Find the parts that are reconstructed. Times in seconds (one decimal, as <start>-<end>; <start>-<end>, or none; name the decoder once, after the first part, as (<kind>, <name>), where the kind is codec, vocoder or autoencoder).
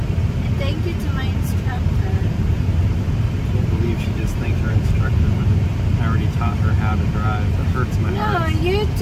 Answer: 1.0-5.9 (vocoder, BigVGAN v2)